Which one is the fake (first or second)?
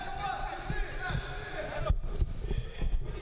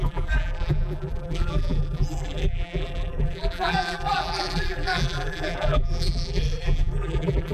second